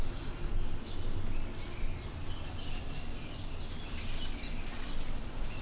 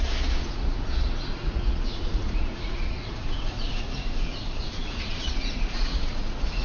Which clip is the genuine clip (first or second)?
first